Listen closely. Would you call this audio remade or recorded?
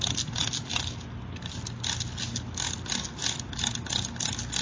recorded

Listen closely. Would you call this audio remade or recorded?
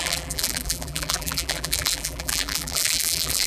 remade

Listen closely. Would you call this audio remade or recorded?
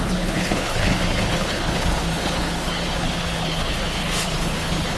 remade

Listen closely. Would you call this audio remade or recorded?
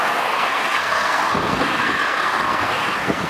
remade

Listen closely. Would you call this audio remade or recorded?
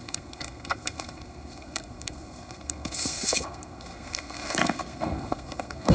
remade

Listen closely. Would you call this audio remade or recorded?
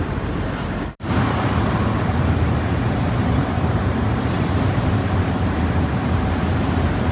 remade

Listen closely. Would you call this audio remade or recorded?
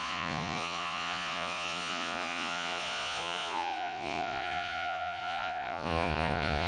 remade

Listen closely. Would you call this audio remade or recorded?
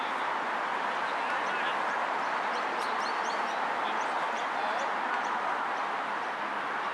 recorded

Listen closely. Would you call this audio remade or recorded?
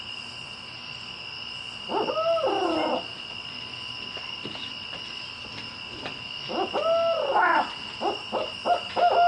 recorded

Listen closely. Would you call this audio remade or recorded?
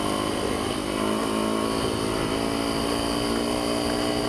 recorded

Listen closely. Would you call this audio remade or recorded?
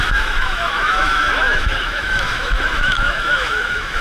remade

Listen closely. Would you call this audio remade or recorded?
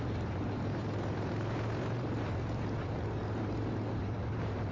remade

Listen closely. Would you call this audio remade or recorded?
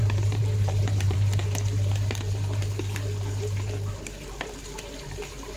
remade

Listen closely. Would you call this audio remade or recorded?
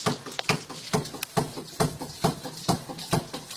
recorded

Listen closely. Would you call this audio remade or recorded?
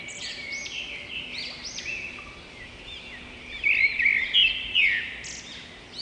recorded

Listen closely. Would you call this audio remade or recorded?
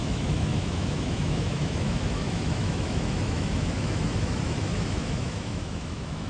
remade